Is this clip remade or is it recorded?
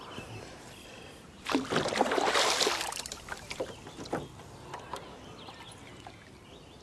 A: recorded